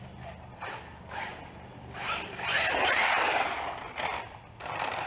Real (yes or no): yes